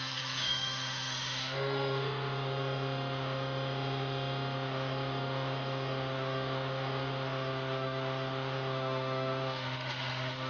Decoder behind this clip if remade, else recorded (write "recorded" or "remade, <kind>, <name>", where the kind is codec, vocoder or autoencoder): remade, autoencoder, DAC-VAE